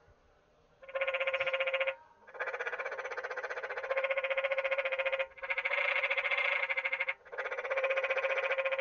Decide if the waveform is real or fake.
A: real